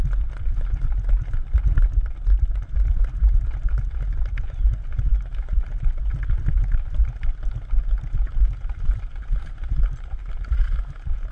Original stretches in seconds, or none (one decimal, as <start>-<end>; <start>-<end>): 0.0-11.3